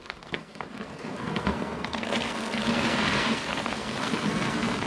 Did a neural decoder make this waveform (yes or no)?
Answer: yes